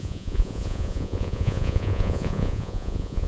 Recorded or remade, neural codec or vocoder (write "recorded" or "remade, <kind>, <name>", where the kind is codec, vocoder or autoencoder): remade, vocoder, Vocos